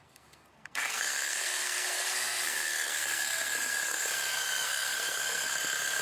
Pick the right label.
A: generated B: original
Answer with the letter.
A